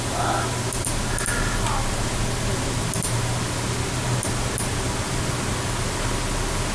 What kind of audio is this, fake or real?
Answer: real